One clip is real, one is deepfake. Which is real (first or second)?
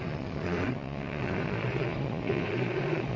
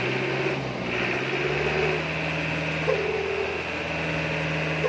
second